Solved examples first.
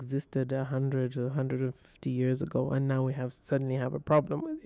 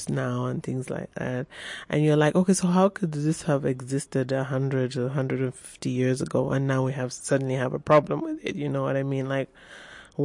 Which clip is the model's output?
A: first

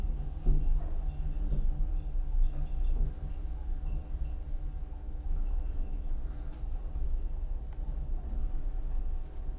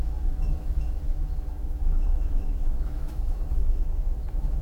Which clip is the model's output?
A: second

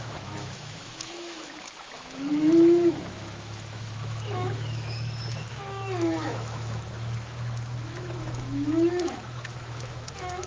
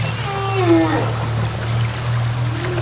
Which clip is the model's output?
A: first